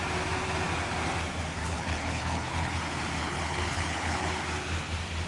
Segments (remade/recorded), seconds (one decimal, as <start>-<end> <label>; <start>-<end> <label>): 0.0-1.6 recorded; 1.6-2.8 remade; 2.8-3.2 recorded; 3.2-4.4 remade; 4.4-5.3 recorded